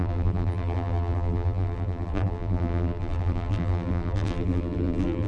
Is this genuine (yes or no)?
no